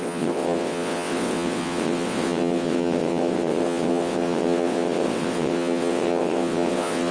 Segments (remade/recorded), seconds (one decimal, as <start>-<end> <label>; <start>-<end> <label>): 0.0-7.1 remade